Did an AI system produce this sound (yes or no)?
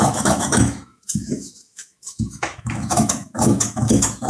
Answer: yes